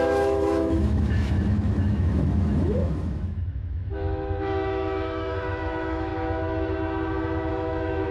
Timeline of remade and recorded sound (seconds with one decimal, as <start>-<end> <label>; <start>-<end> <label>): 0.0-6.1 remade; 6.1-7.5 recorded; 7.5-8.1 remade